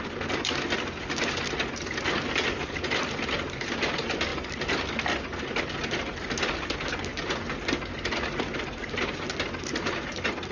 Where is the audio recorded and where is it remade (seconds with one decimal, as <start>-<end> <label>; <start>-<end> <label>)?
0.0-10.5 recorded